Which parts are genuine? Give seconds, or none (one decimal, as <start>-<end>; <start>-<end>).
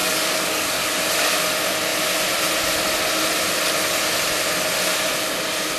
1.0-5.8